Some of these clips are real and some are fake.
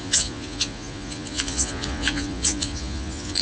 fake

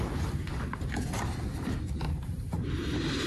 fake